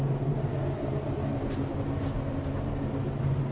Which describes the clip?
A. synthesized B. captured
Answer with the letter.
B